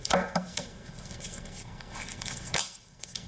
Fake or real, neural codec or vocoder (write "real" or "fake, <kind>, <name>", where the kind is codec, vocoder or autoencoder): fake, codec, SNAC